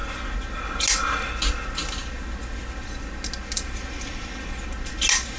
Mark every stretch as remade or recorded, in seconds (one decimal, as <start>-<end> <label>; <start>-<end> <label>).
0.0-5.4 recorded